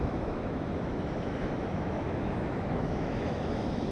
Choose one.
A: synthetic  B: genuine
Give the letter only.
A